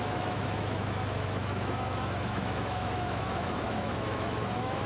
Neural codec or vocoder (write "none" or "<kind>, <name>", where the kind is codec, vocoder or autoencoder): autoencoder, DAC-VAE